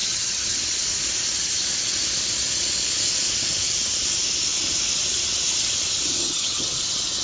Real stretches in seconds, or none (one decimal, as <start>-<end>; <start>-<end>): 0.6-6.2; 6.8-7.2